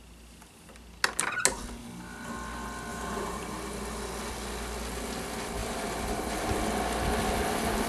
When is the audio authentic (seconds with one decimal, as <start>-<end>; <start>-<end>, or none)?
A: 0.0-2.9; 3.4-5.6; 6.6-7.9